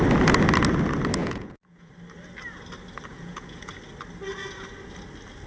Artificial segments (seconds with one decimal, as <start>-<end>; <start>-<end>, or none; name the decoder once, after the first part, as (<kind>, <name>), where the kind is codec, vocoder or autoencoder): 1.2-1.9 (vocoder, Vocos); 3.1-3.7